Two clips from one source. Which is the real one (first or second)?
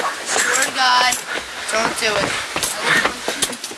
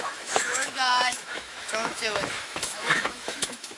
first